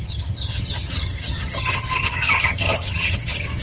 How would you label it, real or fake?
fake